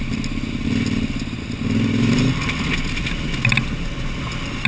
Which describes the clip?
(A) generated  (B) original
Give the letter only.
B